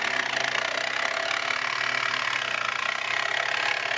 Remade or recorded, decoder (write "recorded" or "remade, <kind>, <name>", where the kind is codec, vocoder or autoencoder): recorded